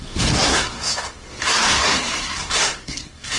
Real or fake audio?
fake